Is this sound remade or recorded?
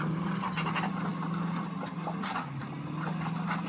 recorded